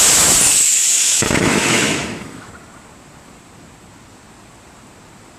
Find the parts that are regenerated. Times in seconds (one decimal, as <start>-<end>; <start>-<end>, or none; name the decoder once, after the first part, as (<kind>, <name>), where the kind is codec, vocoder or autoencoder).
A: 1.0-2.5 (autoencoder, DAC-VAE)